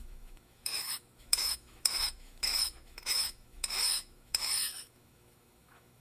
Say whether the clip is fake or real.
fake